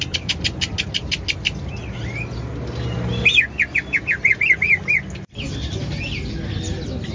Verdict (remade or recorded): recorded